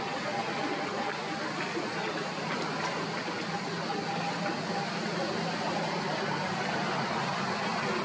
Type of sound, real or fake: real